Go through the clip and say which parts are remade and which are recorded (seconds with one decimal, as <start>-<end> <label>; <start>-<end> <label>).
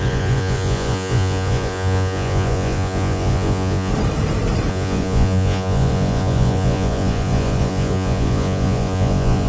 0.0-3.9 remade; 3.9-4.7 recorded; 4.7-9.5 remade